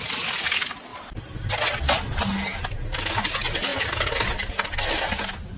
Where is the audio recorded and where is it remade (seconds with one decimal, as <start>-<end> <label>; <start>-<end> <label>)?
0.0-0.9 recorded; 0.9-1.5 remade; 1.5-5.6 recorded